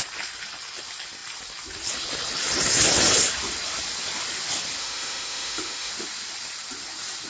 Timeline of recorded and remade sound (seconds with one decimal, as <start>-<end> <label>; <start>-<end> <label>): 0.0-4.8 recorded; 4.8-5.9 remade; 5.9-7.3 recorded